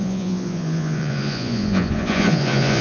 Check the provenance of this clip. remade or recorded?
remade